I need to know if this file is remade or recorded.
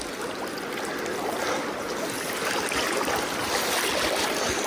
recorded